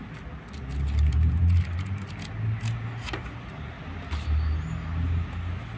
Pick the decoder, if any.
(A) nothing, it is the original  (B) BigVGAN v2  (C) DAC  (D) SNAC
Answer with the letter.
A